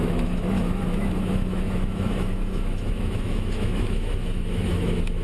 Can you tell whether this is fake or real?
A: fake